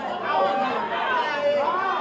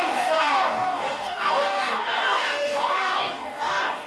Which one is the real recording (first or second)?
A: first